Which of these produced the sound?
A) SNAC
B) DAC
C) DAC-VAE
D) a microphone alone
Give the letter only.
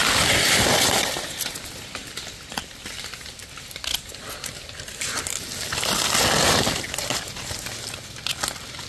D